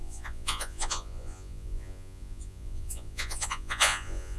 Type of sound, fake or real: fake